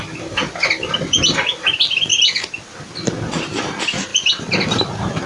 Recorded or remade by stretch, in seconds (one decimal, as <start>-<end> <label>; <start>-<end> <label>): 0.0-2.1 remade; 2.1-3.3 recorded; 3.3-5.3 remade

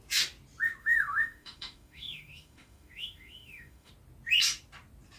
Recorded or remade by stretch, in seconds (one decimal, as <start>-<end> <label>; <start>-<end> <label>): 0.0-0.8 recorded; 0.8-3.9 remade; 3.9-5.2 recorded

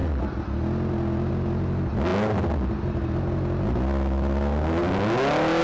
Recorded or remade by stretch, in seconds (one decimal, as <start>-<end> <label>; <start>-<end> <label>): 0.0-5.6 recorded

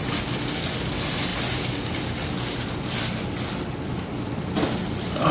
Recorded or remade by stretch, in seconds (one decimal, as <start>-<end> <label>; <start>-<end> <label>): 0.0-5.3 recorded

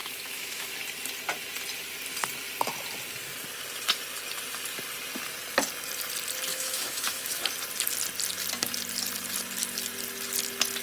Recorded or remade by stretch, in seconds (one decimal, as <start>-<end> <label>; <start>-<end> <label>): 0.0-0.7 remade; 0.7-6.5 recorded; 6.5-7.4 remade; 7.4-10.8 recorded